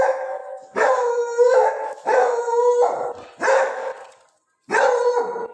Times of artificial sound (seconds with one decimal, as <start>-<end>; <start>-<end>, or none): 0.0-2.6; 3.5-3.9